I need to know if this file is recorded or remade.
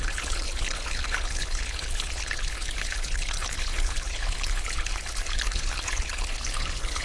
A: remade